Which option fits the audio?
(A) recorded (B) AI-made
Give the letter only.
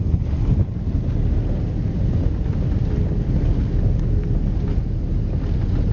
A